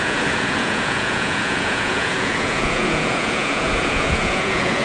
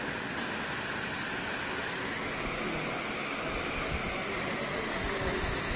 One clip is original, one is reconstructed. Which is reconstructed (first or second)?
first